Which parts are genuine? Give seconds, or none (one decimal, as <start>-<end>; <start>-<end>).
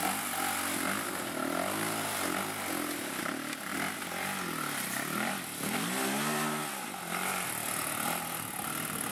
0.0-9.1